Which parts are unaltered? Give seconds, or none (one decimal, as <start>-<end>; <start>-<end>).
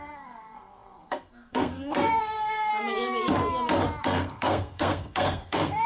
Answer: 2.7-4.0